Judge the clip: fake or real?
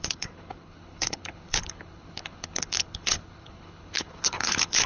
fake